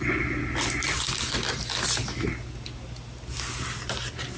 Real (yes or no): yes